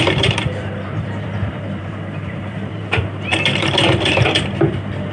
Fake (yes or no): yes